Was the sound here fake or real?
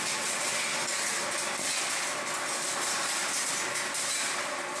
real